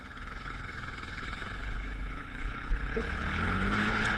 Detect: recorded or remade remade